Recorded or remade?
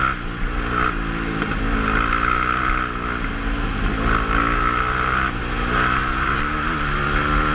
recorded